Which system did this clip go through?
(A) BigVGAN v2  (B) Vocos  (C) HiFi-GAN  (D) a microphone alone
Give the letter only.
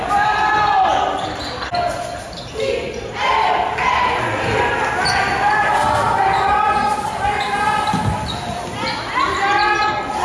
D